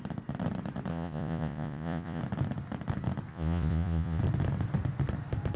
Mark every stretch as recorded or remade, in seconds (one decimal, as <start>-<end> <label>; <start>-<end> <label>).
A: 0.0-0.9 recorded; 0.9-2.2 remade; 2.2-3.3 recorded; 3.3-4.2 remade; 4.2-5.6 recorded